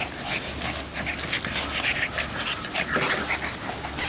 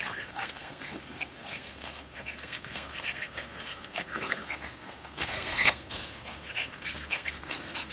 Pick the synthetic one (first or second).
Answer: second